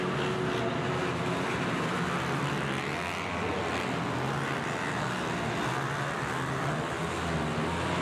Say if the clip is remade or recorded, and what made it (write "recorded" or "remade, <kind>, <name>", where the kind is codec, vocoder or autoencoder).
recorded